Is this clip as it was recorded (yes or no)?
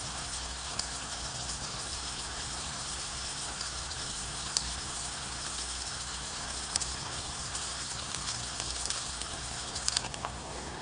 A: no